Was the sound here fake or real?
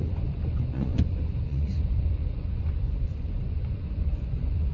fake